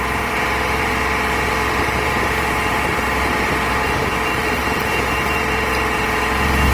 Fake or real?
fake